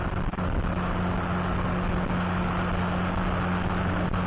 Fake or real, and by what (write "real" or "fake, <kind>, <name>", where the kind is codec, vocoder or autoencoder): real